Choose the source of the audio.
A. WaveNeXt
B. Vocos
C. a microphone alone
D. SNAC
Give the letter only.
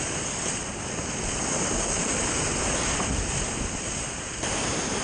C